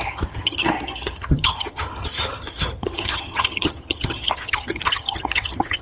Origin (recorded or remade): remade